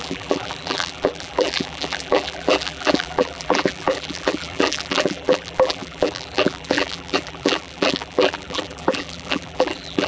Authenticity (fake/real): fake